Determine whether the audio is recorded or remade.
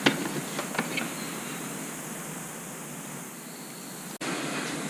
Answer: recorded